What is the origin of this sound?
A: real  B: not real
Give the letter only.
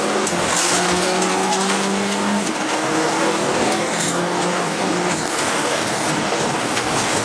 B